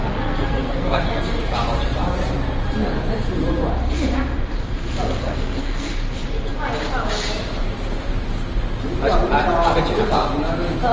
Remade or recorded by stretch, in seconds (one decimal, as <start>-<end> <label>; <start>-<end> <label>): 0.0-1.2 remade; 1.2-5.2 recorded; 5.2-5.9 remade; 5.9-10.9 recorded